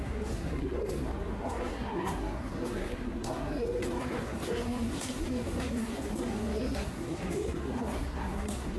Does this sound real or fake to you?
fake